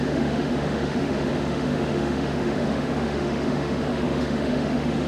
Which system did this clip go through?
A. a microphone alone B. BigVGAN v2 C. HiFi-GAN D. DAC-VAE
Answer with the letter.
D